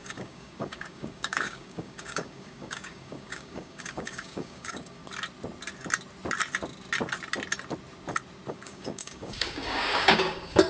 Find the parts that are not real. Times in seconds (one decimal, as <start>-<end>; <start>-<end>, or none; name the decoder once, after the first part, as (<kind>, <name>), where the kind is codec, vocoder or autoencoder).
0.0-5.0 (codec, DAC); 8.5-10.7